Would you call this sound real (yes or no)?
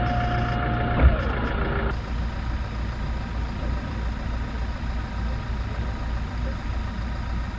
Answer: yes